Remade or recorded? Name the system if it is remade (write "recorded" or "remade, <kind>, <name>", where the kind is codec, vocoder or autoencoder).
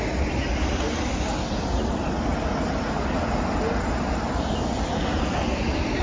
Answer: recorded